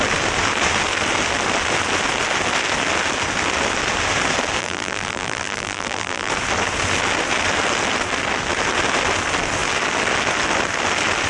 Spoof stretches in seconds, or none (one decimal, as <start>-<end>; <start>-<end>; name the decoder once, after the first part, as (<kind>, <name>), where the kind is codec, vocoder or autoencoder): 4.6-6.3 (vocoder, BigVGAN v2)